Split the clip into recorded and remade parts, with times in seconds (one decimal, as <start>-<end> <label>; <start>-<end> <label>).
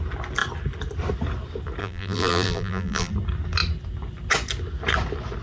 0.0-1.8 recorded; 1.8-3.1 remade; 3.1-5.4 recorded